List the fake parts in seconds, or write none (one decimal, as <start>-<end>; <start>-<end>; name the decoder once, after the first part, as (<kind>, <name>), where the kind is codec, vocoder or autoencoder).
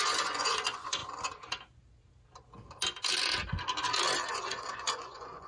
0.0-1.0 (vocoder, Vocos); 4.3-5.5